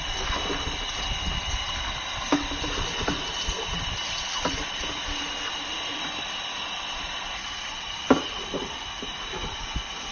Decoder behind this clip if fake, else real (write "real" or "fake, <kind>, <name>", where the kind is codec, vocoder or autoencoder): fake, vocoder, BigVGAN v2